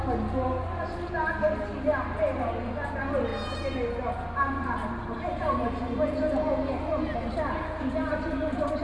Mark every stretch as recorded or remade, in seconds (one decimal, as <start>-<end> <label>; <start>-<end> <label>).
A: 0.0-8.8 recorded